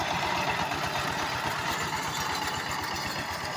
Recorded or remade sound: recorded